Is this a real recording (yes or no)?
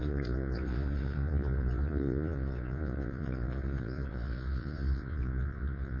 no